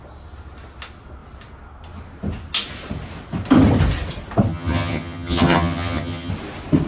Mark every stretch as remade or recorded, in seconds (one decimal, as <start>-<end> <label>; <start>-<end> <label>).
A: 0.0-4.5 recorded; 4.5-6.3 remade; 6.3-6.9 recorded